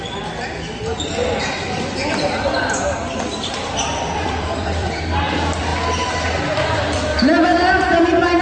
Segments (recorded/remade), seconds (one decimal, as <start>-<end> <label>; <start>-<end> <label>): 0.0-1.2 recorded; 1.2-5.2 remade; 5.2-8.4 recorded